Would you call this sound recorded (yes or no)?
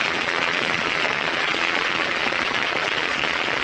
no